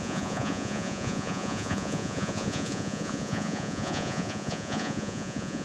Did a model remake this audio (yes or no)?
yes